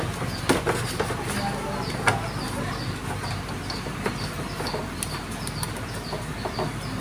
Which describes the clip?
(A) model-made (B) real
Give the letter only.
B